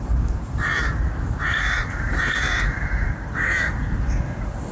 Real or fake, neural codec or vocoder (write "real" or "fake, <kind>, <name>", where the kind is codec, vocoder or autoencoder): fake, vocoder, BigVGAN v2